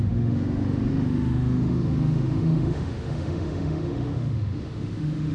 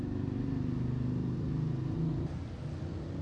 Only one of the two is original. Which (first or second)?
second